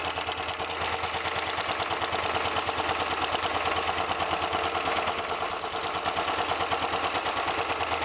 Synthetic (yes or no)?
no